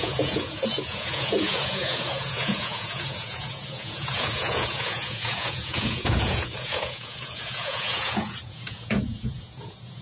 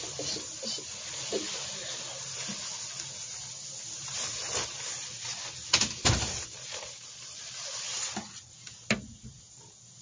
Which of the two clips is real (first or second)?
second